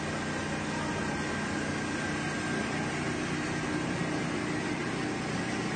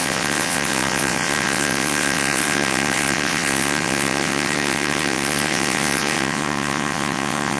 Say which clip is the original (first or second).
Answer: first